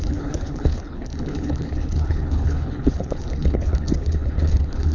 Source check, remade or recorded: remade